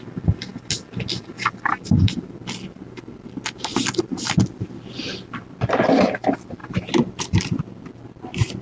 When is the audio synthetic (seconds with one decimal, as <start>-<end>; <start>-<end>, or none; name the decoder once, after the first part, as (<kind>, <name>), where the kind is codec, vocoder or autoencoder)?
6.6-7.8 (vocoder, BigVGAN v2)